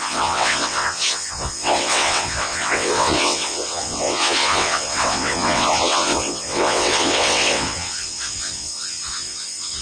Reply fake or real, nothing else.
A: fake